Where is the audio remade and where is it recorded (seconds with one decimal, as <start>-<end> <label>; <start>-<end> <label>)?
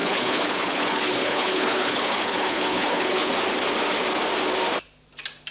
0.0-3.3 remade; 3.3-5.5 recorded